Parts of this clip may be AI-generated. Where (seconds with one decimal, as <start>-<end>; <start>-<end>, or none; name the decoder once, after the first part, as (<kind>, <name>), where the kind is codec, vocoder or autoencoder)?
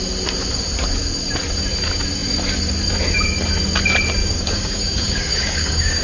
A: 4.2-6.0 (codec, DAC)